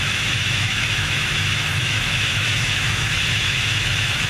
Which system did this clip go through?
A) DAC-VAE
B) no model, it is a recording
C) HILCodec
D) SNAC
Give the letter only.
A